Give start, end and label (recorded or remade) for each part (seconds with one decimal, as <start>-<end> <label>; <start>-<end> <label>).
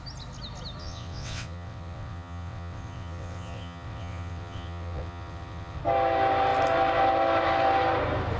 0.0-0.8 recorded; 0.8-5.8 remade; 5.8-8.4 recorded